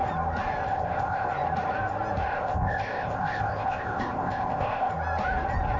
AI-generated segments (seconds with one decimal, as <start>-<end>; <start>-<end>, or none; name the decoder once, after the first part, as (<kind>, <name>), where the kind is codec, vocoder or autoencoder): 0.7-1.3 (codec, ZipCodec); 2.3-4.9